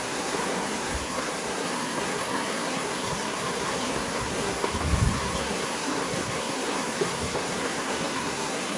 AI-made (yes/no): yes